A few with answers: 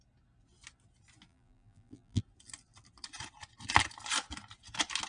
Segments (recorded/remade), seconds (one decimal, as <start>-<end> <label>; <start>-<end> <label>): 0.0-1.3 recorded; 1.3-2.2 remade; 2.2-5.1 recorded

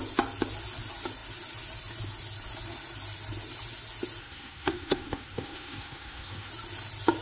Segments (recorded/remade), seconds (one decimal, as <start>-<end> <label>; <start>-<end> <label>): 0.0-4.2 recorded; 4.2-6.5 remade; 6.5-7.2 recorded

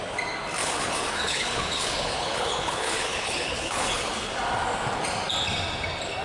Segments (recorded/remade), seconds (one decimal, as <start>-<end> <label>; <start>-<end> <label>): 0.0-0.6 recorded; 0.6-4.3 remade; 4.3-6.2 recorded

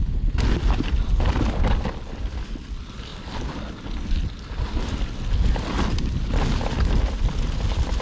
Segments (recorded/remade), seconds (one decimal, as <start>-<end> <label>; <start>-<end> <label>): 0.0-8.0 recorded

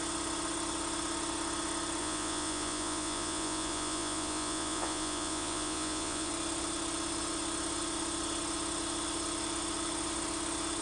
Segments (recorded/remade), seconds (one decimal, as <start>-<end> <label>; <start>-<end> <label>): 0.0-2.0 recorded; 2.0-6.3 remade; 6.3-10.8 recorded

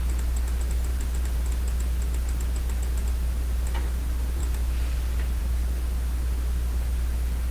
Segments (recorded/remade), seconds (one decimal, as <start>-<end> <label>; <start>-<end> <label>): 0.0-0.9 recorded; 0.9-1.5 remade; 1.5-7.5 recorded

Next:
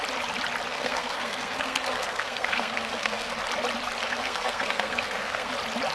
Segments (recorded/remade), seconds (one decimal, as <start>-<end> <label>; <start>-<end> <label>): 0.0-0.7 recorded; 0.7-3.4 remade; 3.4-4.0 recorded; 4.0-5.5 remade; 5.5-5.9 recorded

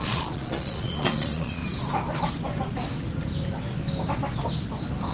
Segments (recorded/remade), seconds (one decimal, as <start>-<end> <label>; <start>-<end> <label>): 0.0-1.6 remade; 1.6-5.1 recorded